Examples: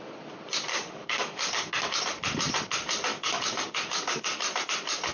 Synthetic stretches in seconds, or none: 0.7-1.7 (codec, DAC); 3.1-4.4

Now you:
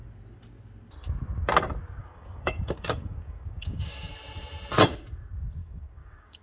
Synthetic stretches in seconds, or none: 2.0-4.1 (codec, DAC); 5.6-6.4

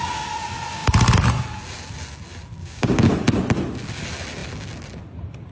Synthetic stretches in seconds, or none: 2.6-3.1 (codec, DAC)

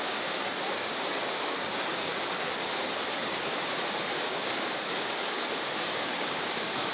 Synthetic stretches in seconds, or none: 0.0-2.1 (codec, DAC); 3.2-6.9